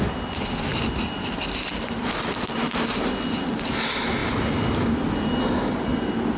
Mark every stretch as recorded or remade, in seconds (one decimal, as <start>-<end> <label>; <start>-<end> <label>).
0.0-6.4 recorded